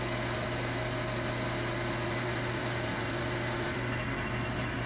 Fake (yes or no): no